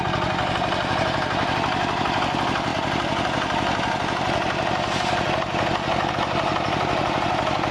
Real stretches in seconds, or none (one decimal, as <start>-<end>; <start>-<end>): 0.0-7.7